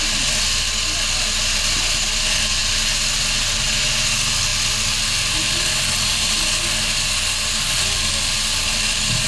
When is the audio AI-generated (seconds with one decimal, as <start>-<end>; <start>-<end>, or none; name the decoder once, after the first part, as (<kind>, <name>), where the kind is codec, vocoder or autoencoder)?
none